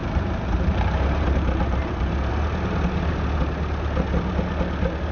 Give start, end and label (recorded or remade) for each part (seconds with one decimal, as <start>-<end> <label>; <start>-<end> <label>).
0.0-2.3 remade; 2.3-5.1 recorded